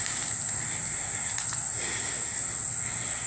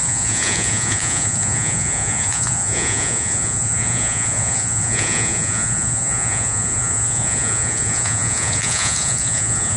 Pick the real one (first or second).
first